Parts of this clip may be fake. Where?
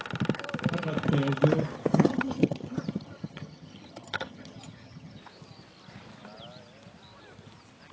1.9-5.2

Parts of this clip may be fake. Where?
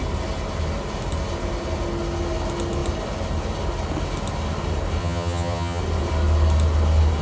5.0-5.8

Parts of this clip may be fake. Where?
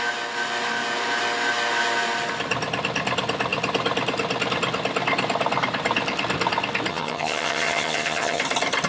6.9-8.4